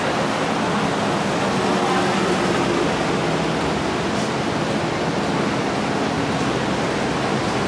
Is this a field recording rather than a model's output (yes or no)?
yes